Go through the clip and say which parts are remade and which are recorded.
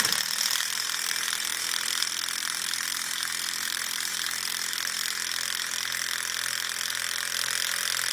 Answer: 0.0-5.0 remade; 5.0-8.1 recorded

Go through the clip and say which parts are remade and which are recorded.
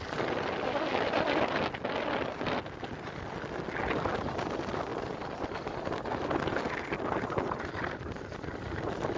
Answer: 0.0-9.2 recorded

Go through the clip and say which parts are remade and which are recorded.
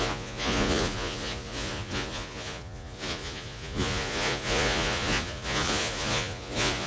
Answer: 0.0-6.9 remade